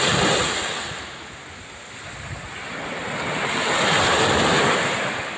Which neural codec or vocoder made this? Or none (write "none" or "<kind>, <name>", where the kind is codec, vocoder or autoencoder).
none